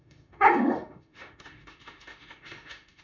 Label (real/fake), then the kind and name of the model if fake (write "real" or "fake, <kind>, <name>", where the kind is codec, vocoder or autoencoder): fake, autoencoder, DAC-VAE